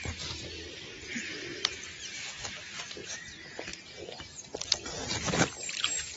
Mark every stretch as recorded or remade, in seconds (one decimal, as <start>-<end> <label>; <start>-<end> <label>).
0.0-1.5 recorded; 1.5-2.8 remade; 2.8-6.2 recorded